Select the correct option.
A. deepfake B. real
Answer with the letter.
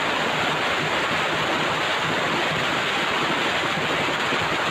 B